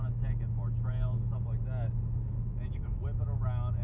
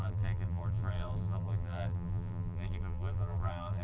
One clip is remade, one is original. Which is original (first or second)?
first